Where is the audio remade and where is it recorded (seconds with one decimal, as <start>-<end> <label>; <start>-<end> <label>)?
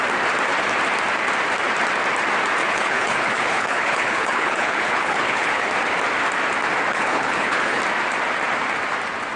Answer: 0.0-2.6 recorded; 2.6-5.7 remade; 5.7-6.9 recorded; 6.9-7.8 remade; 7.8-9.4 recorded